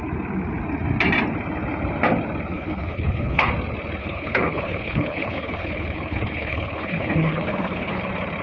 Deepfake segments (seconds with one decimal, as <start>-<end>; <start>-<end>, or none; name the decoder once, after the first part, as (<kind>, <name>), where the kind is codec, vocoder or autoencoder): 2.5-3.5 (codec, HILCodec); 4.0-8.0